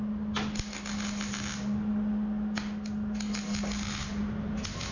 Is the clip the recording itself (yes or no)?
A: yes